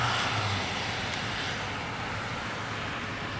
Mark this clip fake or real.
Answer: real